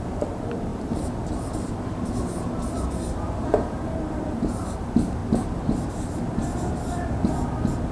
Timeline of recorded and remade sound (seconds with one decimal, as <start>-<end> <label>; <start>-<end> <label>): 0.0-5.2 remade; 5.2-7.9 recorded